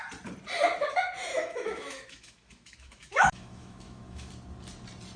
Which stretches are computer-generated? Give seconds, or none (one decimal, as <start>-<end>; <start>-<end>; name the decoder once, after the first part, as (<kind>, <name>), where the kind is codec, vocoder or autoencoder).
1.3-4.3 (autoencoder, DAC-VAE)